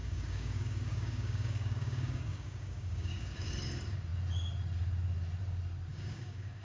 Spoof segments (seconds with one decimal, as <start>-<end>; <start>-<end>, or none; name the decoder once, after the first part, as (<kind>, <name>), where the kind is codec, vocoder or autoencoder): 0.0-3.5 (codec, DAC); 5.9-6.6